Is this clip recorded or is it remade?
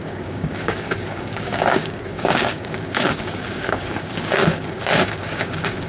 remade